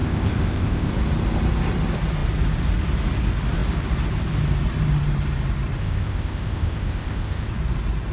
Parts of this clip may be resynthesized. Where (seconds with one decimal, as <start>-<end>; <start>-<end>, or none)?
0.0-0.9; 5.8-7.5